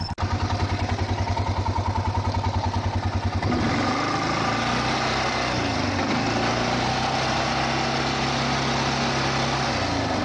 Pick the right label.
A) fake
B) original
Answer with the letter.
B